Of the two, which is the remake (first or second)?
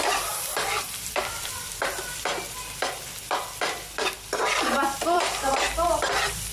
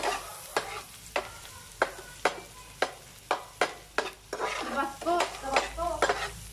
first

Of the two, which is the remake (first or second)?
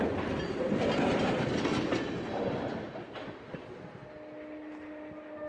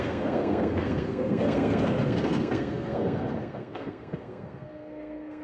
second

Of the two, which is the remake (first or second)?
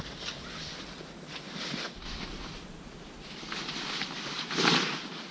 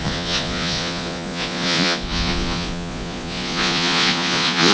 second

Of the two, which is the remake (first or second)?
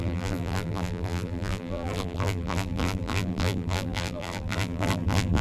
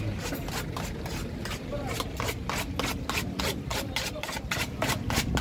first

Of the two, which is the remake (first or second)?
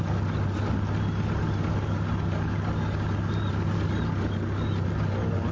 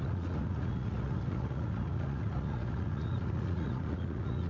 second